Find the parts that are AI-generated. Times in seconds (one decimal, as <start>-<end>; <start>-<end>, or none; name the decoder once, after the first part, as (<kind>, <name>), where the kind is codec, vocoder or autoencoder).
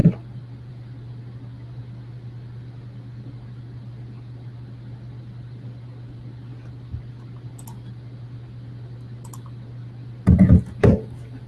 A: none